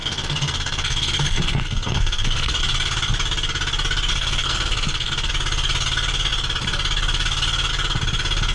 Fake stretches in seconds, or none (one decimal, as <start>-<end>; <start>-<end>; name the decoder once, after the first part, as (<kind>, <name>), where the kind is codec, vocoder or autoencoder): 0.0-2.6 (codec, SNAC); 4.1-5.3